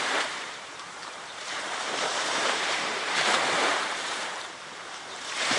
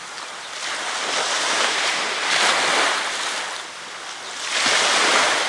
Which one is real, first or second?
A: second